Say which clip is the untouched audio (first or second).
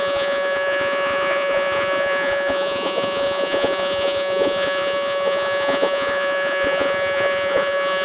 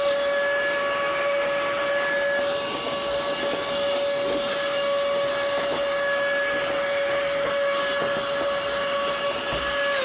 second